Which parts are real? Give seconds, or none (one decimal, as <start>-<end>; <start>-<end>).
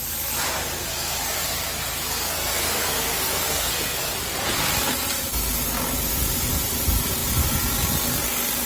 0.0-0.9; 4.1-8.7